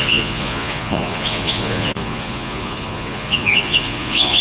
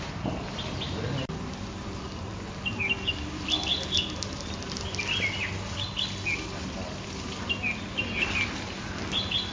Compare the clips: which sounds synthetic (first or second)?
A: first